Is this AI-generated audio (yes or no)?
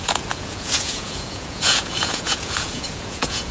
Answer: yes